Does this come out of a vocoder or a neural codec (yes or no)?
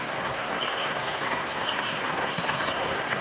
yes